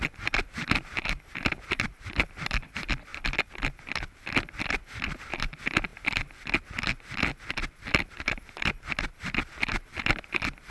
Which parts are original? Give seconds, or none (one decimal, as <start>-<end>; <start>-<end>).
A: 3.1-4.6; 7.3-7.9